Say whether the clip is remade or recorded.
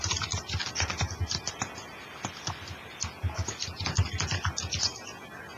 recorded